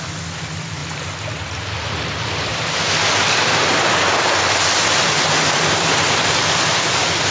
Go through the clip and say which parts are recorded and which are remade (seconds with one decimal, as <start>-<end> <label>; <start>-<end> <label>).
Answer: 0.0-0.8 remade; 0.8-2.0 recorded; 2.0-2.5 remade; 2.5-7.3 recorded